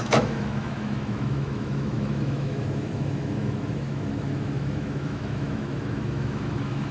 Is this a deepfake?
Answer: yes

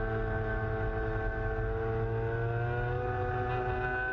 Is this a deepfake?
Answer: no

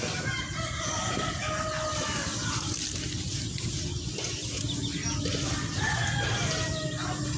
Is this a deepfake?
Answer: no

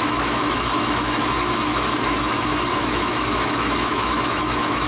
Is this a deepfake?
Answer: yes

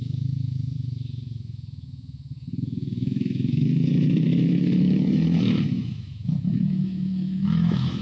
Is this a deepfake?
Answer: yes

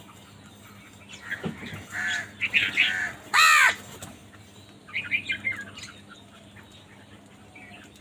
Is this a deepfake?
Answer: no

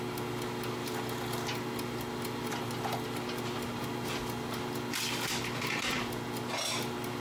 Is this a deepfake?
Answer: no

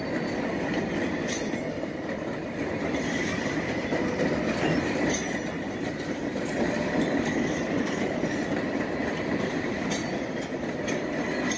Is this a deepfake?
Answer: no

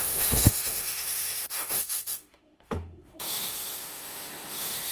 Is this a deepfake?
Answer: yes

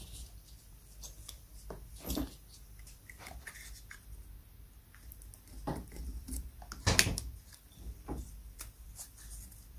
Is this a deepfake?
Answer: no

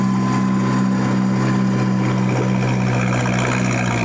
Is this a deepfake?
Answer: no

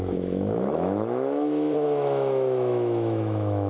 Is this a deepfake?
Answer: yes